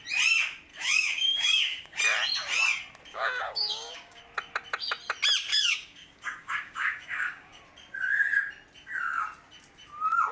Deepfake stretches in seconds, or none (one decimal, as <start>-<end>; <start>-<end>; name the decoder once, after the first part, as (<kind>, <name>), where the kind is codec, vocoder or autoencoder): 0.7-2.0 (codec, DAC); 3.1-4.2; 5.5-7.6